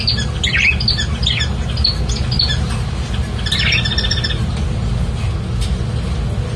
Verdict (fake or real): real